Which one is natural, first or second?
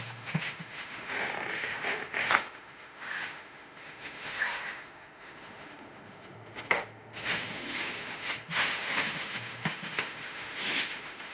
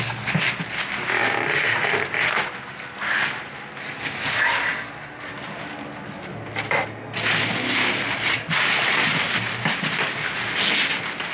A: second